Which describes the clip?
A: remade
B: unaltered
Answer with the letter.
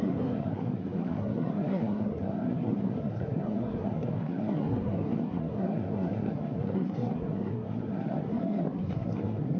A